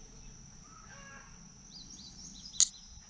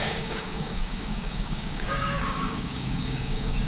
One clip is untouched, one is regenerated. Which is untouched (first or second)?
first